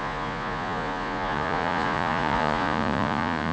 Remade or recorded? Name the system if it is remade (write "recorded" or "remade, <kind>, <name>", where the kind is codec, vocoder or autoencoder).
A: remade, vocoder, Vocos